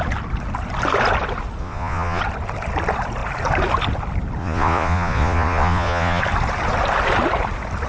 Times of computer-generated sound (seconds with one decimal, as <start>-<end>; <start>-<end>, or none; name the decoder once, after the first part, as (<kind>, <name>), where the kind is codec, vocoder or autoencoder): 1.6-2.2 (vocoder, Vocos); 4.4-6.2